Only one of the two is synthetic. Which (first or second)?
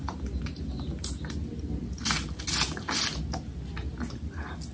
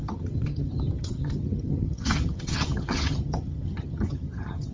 second